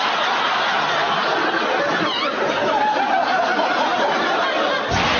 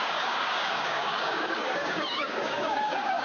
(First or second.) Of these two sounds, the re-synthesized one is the second